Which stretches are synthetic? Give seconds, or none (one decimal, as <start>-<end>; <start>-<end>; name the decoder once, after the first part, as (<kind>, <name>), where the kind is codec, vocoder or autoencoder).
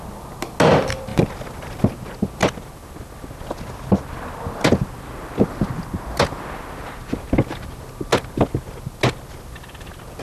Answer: none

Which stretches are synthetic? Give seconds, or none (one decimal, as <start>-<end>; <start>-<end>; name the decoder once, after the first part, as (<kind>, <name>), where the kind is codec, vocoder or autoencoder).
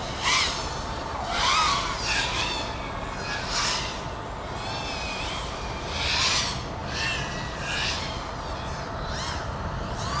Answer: none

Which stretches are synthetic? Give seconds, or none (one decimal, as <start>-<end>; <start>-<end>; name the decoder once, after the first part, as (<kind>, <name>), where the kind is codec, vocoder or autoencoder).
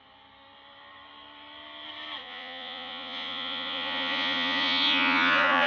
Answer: 2.2-5.7 (vocoder, Vocos)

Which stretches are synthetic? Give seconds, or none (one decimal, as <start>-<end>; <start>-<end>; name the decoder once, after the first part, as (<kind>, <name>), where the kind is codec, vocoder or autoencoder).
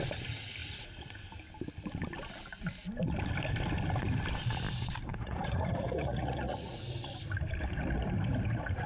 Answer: 0.6-1.1 (vocoder, Vocos); 5.1-6.8